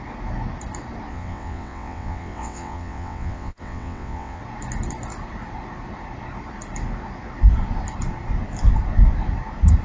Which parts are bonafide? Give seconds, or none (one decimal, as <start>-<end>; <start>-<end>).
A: 0.0-1.1; 4.4-9.8